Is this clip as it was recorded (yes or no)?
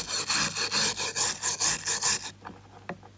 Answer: yes